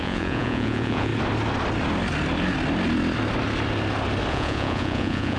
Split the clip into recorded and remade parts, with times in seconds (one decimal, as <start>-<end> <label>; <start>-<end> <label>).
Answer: 0.0-1.1 remade; 1.1-4.3 recorded; 4.3-5.4 remade